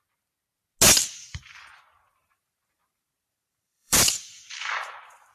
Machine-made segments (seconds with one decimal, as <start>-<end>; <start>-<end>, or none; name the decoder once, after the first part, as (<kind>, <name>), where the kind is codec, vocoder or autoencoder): 2.2-5.3 (vocoder, BigVGAN v2)